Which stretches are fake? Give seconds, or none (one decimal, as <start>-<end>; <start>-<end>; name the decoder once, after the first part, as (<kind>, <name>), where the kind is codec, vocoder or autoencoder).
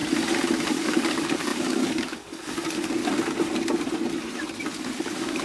0.7-3.0 (codec, DAC); 5.0-5.4